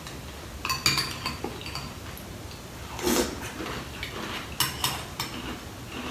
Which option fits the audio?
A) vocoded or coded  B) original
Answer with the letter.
B